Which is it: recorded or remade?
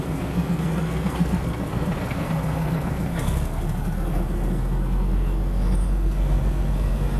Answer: remade